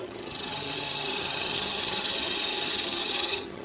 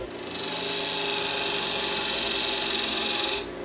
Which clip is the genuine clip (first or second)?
second